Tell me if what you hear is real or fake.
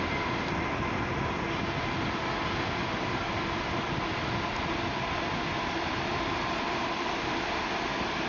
real